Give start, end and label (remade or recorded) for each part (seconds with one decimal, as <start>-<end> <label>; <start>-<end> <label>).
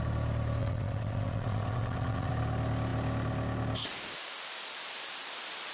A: 0.0-0.6 recorded; 0.6-2.3 remade; 2.3-5.7 recorded